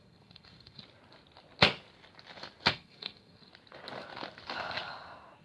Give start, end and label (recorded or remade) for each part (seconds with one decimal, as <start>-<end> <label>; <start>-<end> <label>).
0.0-0.8 remade; 0.8-2.7 recorded; 2.7-3.5 remade; 3.5-5.4 recorded